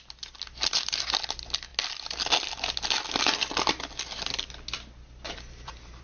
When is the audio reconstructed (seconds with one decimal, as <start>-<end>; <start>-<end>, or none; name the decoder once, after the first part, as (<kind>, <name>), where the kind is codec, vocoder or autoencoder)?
none